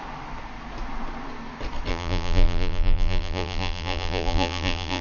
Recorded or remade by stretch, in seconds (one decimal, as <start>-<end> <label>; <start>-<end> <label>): 0.0-1.9 recorded; 1.9-5.0 remade